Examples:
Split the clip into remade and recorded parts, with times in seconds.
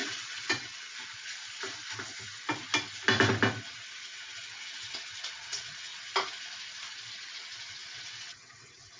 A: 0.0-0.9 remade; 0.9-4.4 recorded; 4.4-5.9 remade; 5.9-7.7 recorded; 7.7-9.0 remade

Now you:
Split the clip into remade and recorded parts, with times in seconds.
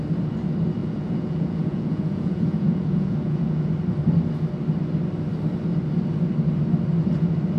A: 0.0-0.8 recorded; 0.8-3.7 remade; 3.7-7.6 recorded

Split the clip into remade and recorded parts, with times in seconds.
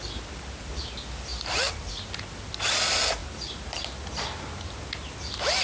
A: 0.0-1.3 recorded; 1.3-1.9 remade; 1.9-5.6 recorded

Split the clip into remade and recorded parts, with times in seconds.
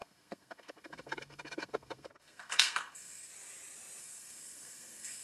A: 0.0-3.3 remade; 3.3-4.0 recorded; 4.0-5.2 remade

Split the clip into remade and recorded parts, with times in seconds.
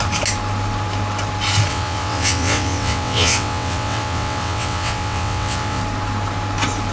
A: 0.0-1.7 recorded; 1.7-5.8 remade; 5.8-6.9 recorded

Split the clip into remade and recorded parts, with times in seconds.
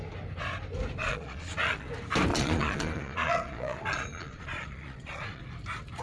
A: 0.0-1.0 recorded; 1.0-1.9 remade; 1.9-2.3 recorded; 2.3-5.4 remade; 5.4-6.0 recorded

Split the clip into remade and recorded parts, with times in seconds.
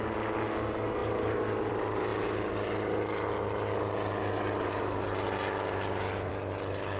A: 0.0-7.0 recorded